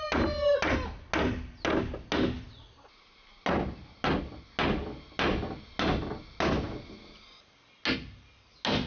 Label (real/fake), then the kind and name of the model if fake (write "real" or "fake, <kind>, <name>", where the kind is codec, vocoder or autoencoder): real